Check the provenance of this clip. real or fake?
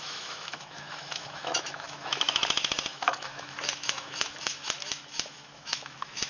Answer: fake